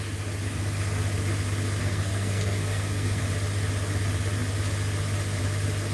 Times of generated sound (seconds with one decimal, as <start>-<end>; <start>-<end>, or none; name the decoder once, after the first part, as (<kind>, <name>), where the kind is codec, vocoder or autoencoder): 1.8-3.2 (codec, SNAC)

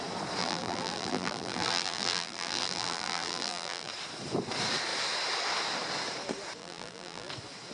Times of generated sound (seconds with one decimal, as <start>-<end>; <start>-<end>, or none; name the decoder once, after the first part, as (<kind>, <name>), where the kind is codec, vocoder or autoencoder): 0.4-3.9 (vocoder, BigVGAN v2); 6.6-7.3

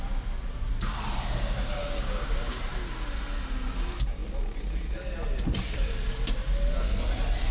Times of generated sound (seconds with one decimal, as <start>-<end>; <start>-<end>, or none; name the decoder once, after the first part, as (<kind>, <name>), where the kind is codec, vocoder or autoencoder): 1.8-2.6 (codec, DAC)

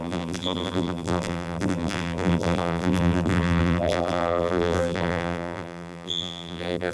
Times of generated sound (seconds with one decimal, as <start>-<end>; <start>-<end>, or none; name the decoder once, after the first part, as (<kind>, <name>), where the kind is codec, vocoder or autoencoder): 0.0-6.9 (vocoder, BigVGAN v2)